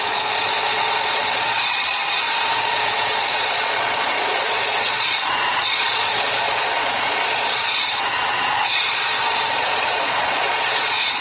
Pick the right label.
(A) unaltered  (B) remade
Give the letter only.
B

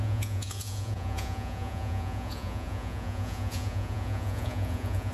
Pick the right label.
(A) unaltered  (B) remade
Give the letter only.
B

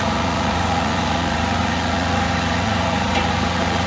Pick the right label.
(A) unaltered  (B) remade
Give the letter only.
B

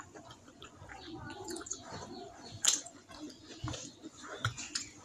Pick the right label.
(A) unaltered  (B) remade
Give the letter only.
B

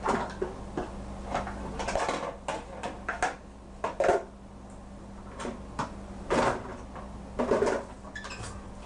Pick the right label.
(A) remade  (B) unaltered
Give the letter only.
B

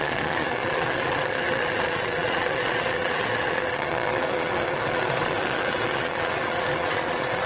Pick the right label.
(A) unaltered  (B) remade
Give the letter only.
B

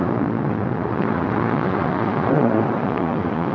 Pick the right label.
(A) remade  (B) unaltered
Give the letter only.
A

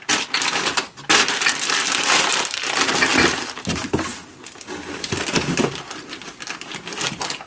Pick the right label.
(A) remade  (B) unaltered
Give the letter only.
B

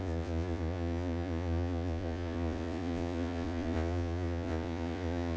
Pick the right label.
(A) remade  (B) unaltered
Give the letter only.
A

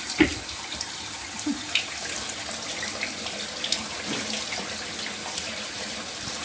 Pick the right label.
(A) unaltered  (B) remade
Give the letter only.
A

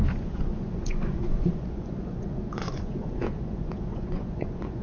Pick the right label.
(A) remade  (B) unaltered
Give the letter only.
A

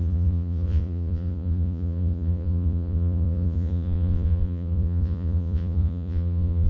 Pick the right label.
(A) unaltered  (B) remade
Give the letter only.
B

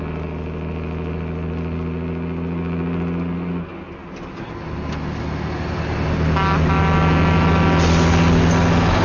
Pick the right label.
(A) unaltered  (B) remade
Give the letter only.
A